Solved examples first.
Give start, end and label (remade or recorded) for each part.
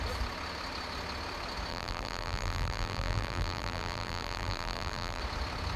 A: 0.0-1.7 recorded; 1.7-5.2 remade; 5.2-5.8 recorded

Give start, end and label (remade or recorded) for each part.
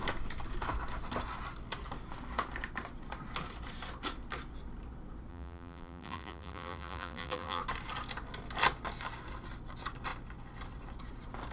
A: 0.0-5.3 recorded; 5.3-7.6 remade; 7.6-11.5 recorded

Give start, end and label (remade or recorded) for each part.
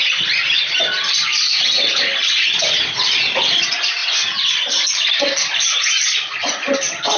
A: 0.0-1.3 recorded; 1.3-2.6 remade; 2.6-4.0 recorded; 4.0-5.2 remade; 5.2-7.2 recorded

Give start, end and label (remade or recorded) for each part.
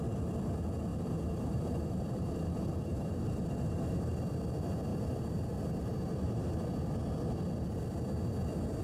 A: 0.0-0.9 recorded; 0.9-4.1 remade; 4.1-4.9 recorded; 4.9-6.7 remade; 6.7-8.8 recorded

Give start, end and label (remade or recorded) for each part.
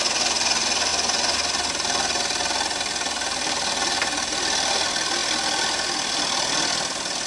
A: 0.0-5.2 remade; 5.2-7.3 recorded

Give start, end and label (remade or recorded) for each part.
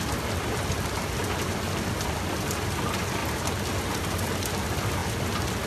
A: 0.0-3.2 remade; 3.2-4.0 recorded; 4.0-5.0 remade; 5.0-5.7 recorded